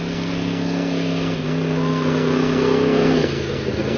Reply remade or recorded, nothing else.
remade